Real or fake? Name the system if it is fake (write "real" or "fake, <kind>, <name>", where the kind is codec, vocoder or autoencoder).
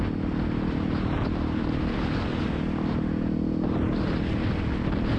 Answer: real